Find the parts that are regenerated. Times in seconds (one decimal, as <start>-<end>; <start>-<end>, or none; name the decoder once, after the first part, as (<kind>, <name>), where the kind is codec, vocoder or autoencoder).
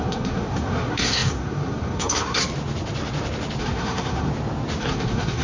0.0-2.4 (codec, SNAC); 3.6-4.3; 4.8-5.4